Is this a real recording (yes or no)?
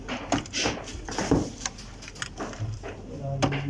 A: yes